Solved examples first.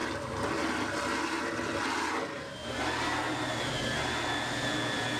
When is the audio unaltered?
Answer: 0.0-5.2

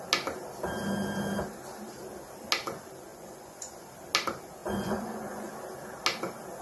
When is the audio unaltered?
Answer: 0.0-3.1; 3.8-4.6; 5.5-6.6

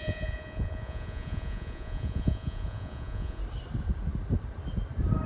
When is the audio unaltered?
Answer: 3.4-5.3

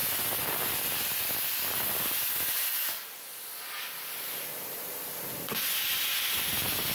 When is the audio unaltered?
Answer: 0.0-6.9

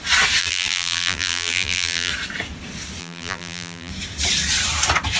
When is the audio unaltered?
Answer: 0.0-0.4; 2.1-3.0; 3.9-5.2

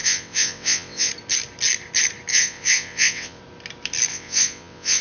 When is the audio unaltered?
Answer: 1.1-2.3; 3.4-4.1